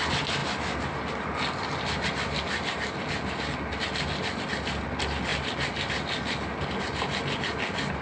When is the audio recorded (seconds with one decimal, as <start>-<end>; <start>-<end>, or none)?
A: 0.0-8.0